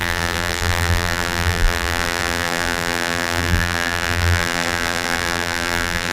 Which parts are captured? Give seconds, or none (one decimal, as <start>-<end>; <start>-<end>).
none